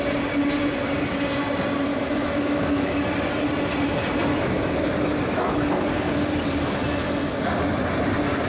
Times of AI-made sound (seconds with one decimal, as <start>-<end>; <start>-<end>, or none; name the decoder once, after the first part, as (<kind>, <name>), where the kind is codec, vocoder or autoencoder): 1.9-3.0 (autoencoder, DAC-VAE); 4.3-5.7

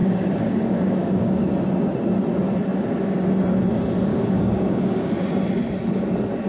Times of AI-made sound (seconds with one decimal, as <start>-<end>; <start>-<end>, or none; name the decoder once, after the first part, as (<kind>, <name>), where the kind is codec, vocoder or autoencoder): 0.0-1.5 (codec, DAC); 4.1-5.1

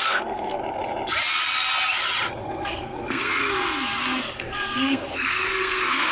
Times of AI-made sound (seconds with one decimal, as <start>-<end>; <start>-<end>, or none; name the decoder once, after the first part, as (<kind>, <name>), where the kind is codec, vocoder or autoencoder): 0.0-0.6 (codec, SNAC); 2.4-3.4; 4.4-6.1

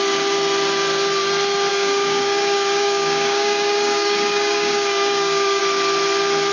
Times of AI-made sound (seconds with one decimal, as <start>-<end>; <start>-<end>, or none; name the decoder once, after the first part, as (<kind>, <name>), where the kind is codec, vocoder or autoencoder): 1.7-5.6 (codec, DAC)

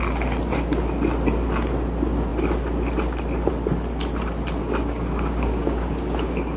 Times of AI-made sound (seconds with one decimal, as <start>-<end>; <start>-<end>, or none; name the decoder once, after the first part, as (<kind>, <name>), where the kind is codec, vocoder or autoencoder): 4.6-6.6 (codec, DAC)

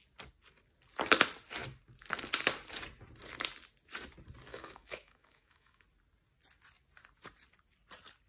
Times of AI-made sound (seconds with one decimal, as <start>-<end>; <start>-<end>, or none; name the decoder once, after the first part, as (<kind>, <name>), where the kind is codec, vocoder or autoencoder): 4.5-5.8 (autoencoder, DAC-VAE)

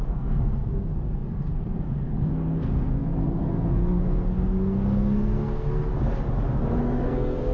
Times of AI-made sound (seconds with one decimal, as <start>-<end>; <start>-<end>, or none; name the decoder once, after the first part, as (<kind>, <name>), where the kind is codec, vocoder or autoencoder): 0.0-5.9 (codec, SNAC); 6.8-7.5

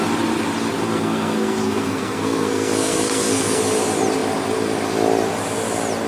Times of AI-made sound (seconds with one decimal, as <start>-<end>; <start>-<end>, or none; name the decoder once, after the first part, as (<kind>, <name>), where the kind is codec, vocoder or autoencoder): 0.8-3.6 (codec, SNAC)